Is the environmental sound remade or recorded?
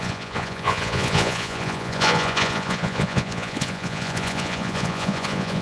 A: remade